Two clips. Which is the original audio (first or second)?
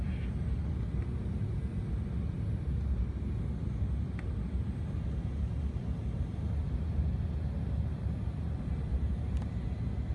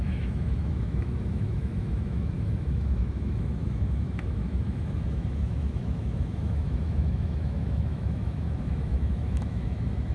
first